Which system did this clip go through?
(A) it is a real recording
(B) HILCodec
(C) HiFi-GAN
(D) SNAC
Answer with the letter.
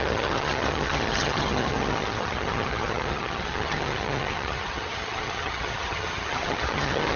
C